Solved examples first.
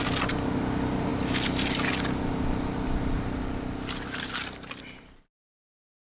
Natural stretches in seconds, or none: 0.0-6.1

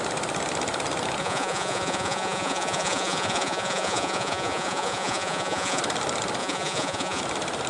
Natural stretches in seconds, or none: 0.0-1.2; 5.8-6.4; 7.2-7.7

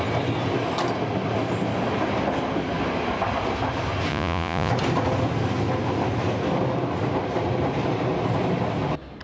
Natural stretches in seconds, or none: 0.0-4.1; 4.7-9.2

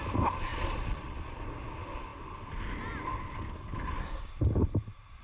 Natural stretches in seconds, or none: 0.0-0.5; 1.4-5.2

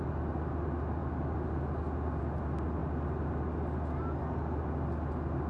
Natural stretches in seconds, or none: 0.0-5.5

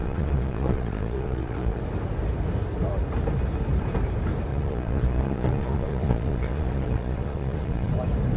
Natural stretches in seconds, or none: 1.8-4.5; 7.9-8.4